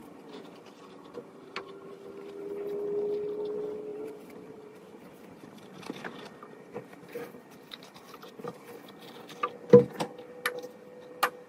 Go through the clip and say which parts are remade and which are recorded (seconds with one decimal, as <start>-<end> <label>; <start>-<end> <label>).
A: 0.0-1.5 remade; 1.5-3.9 recorded; 3.9-8.6 remade; 8.6-11.5 recorded